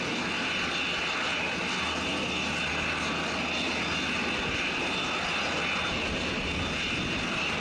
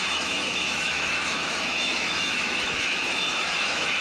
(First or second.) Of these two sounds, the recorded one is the first